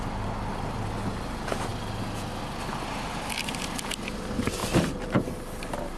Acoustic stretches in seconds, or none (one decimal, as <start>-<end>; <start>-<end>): 0.0-4.6; 5.2-6.0